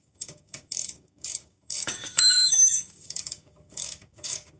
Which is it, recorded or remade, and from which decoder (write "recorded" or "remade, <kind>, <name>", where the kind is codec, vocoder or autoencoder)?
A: remade, codec, DAC